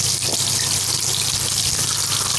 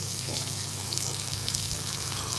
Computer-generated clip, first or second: second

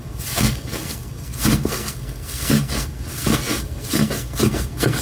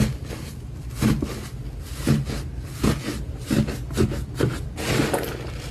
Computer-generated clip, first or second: first